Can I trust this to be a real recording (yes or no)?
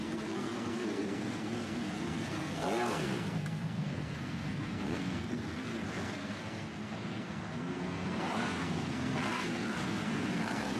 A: no